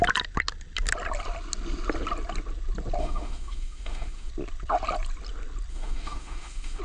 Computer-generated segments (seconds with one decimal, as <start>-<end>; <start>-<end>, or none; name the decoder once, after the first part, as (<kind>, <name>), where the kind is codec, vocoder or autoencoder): 3.0-4.3 (autoencoder, DAC-VAE); 5.7-6.8